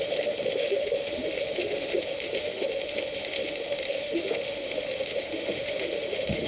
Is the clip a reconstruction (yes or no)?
yes